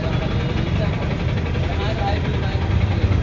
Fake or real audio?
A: real